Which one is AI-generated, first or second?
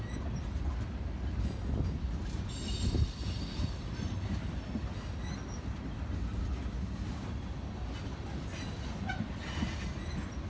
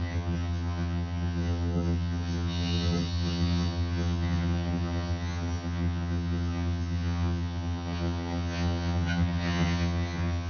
second